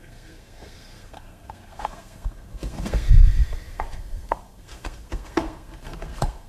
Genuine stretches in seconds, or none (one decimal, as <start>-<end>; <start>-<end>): none